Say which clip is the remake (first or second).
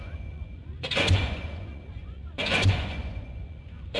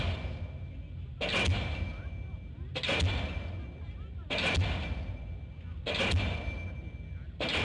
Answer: first